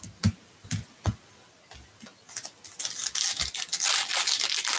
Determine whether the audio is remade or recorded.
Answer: recorded